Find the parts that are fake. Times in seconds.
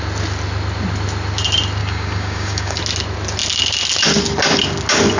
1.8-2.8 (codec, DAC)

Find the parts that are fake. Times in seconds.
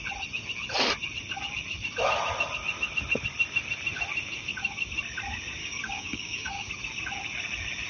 5.6-6.7 (codec, DAC)